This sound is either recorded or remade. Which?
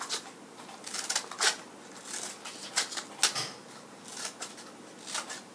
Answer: recorded